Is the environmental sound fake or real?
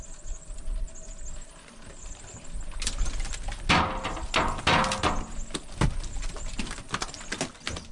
real